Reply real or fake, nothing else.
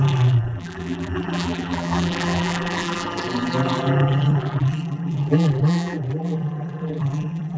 fake